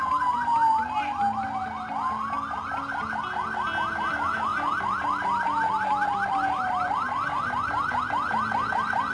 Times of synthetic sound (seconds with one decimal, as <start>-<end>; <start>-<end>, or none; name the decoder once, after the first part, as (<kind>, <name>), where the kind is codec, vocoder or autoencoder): 0.0-0.9 (vocoder, BigVGAN v2)